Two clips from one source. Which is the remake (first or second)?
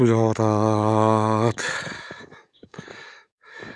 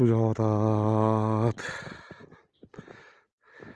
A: first